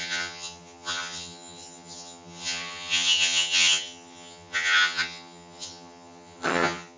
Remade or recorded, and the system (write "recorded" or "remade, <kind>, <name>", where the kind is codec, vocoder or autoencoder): remade, vocoder, HiFi-GAN